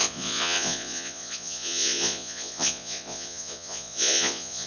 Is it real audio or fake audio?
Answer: fake